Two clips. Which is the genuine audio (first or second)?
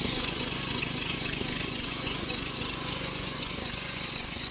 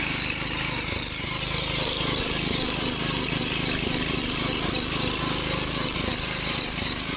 second